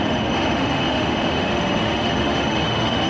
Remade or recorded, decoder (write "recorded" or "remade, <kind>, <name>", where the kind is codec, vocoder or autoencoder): remade, autoencoder, DAC-VAE